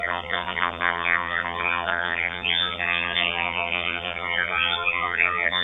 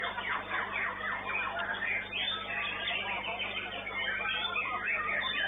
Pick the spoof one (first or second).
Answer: first